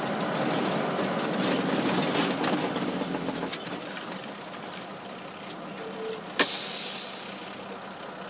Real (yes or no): yes